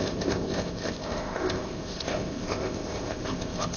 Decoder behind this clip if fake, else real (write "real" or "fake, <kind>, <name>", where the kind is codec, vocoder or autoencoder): fake, codec, ZipCodec